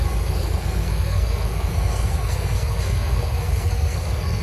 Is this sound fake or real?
fake